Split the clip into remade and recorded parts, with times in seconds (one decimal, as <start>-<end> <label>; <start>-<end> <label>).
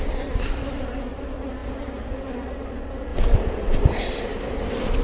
0.0-1.6 remade; 1.6-2.7 recorded; 2.7-3.1 remade; 3.1-3.8 recorded; 3.8-5.0 remade